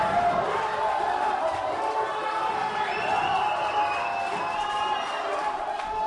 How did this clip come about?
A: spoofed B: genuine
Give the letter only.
B